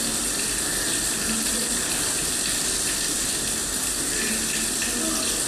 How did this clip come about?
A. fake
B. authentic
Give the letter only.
B